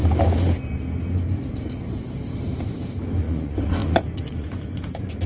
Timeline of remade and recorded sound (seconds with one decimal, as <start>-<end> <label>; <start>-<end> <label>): 0.0-3.2 recorded; 3.2-5.3 remade